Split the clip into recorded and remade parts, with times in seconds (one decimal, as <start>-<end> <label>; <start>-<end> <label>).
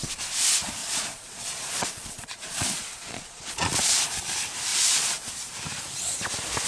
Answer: 0.0-0.8 recorded; 0.8-4.2 remade; 4.2-4.7 recorded; 4.7-5.3 remade; 5.3-6.7 recorded